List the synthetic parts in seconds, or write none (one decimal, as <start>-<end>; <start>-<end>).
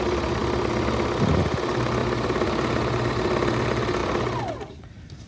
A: 2.0-3.2